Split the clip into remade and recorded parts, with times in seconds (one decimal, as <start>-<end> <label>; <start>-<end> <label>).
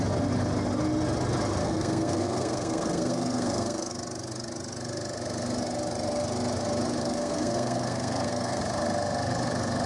0.0-1.6 recorded; 1.6-3.9 remade; 3.9-7.0 recorded; 7.0-8.6 remade; 8.6-9.9 recorded